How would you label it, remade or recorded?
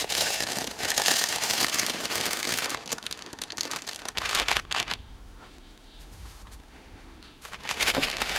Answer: remade